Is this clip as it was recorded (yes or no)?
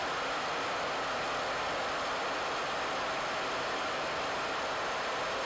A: yes